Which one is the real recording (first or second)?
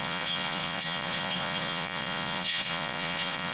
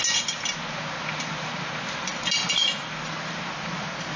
second